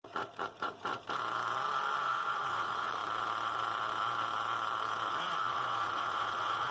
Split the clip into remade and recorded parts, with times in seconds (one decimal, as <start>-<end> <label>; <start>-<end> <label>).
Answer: 0.0-0.9 remade; 0.9-2.0 recorded; 2.0-3.0 remade; 3.0-5.1 recorded; 5.1-6.7 remade